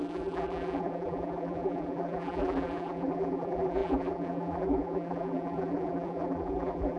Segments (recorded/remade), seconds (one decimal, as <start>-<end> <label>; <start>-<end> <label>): 0.0-7.0 remade